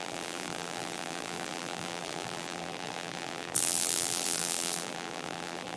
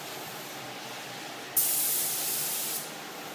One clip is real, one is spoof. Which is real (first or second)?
second